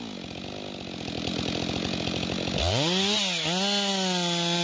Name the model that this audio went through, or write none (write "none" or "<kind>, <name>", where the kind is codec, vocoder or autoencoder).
none